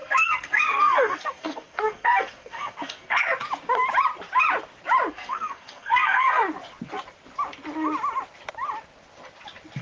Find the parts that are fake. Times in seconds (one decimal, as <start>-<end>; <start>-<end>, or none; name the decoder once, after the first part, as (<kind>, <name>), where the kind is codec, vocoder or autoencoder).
0.0-3.2 (codec, SNAC); 5.1-6.4

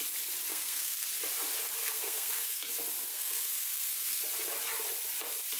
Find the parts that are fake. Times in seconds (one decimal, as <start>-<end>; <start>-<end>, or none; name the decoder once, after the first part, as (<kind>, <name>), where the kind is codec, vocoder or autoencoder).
0.5-1.1 (codec, SNAC); 1.8-2.7; 3.1-4.2

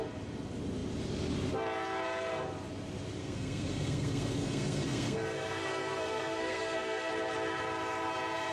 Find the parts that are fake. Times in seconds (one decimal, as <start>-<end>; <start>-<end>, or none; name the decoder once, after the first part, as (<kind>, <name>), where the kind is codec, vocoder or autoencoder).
3.2-7.1 (codec, SNAC)

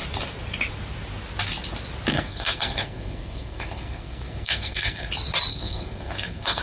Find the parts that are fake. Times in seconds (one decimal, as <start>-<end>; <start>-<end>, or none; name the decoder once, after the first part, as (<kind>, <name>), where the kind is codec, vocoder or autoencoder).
2.1-5.1 (codec, SNAC); 5.5-6.6

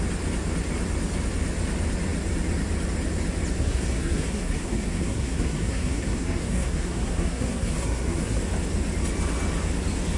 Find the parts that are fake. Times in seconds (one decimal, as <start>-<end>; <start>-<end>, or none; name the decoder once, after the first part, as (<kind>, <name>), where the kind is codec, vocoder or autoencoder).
3.6-8.4 (codec, SNAC)

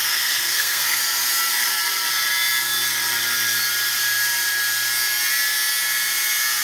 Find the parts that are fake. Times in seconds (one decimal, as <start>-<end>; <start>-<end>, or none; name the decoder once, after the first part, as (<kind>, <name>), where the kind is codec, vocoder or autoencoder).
0.0-1.0 (codec, SNAC)